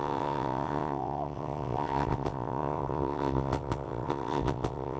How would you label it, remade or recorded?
remade